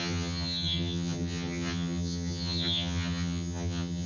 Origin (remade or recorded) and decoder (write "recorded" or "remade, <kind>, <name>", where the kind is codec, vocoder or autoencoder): remade, vocoder, HiFi-GAN